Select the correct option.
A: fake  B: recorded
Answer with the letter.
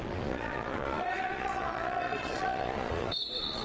A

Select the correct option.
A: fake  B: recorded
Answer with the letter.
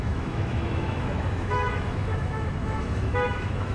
A